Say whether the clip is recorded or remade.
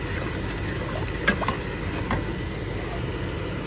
recorded